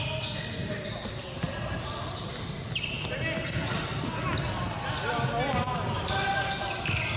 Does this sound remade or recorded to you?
recorded